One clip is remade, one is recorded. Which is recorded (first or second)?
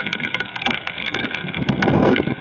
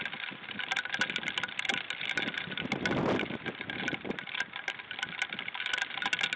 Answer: second